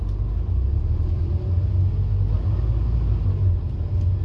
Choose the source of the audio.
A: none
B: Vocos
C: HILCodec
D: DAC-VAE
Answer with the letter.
A